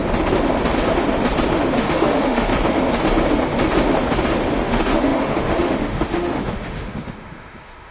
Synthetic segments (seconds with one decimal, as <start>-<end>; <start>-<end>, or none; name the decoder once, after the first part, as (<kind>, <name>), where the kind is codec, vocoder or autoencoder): 1.8-2.5 (autoencoder, DAC-VAE); 4.6-7.9

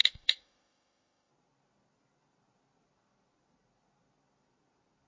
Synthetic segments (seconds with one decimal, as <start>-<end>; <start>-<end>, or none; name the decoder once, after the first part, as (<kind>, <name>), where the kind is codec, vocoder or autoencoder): 0.0-1.3 (autoencoder, DAC-VAE)